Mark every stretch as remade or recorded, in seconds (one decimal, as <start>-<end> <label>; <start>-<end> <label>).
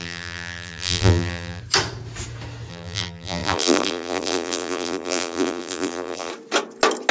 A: 0.0-1.6 remade; 1.6-2.7 recorded; 2.7-6.3 remade; 6.3-7.1 recorded